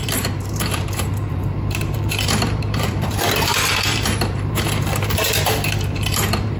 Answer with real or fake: fake